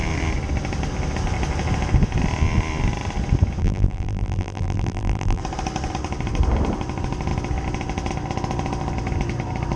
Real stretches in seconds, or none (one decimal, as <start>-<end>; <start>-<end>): 0.0-3.6; 5.4-9.8